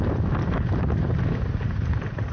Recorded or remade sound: recorded